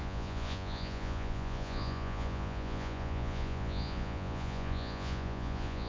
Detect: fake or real fake